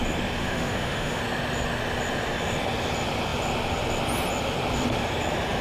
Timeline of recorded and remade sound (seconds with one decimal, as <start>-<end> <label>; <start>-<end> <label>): 0.0-0.4 recorded; 0.4-1.2 remade; 1.2-5.6 recorded